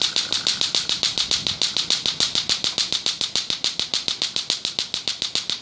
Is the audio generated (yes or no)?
no